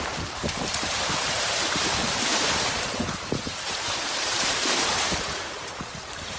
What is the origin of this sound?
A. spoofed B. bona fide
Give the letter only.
A